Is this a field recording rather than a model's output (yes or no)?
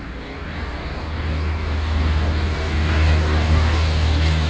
no